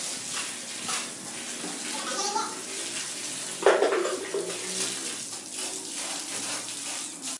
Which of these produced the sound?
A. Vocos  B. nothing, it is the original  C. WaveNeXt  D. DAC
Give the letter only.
B